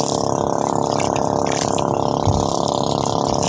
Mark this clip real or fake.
real